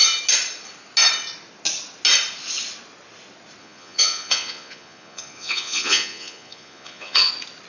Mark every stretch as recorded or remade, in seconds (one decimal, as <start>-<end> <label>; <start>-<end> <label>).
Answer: 0.0-3.6 recorded; 3.6-7.3 remade; 7.3-7.7 recorded